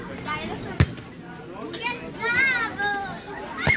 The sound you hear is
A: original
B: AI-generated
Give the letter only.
A